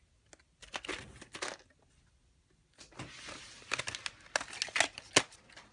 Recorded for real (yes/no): yes